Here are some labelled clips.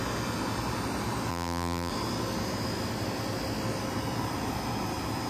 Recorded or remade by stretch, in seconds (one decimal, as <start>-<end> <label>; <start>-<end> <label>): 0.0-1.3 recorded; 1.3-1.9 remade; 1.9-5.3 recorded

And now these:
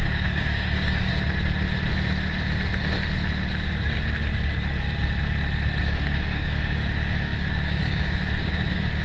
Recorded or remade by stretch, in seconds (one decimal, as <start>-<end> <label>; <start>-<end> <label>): 0.0-1.1 remade; 1.1-5.8 recorded; 5.8-9.0 remade

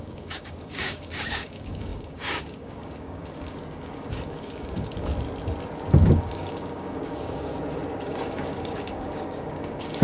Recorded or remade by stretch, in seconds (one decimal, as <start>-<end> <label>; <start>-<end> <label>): 0.0-5.1 remade; 5.1-6.1 recorded; 6.1-7.5 remade; 7.5-8.0 recorded; 8.0-10.0 remade